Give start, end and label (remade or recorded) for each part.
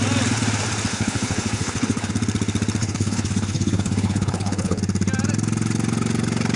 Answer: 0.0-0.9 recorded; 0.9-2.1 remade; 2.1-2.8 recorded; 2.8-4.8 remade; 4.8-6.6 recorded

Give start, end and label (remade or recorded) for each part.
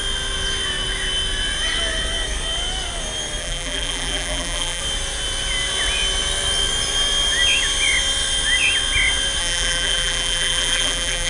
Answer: 0.0-3.4 recorded; 3.4-4.8 remade; 4.8-9.4 recorded; 9.4-11.3 remade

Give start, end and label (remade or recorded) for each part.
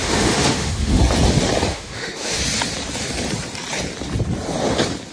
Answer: 0.0-1.0 remade; 1.0-1.7 recorded; 1.7-2.4 remade; 2.4-5.1 recorded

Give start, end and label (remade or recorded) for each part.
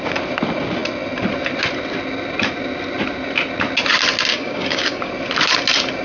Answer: 0.0-4.3 recorded; 4.3-5.1 remade; 5.1-6.0 recorded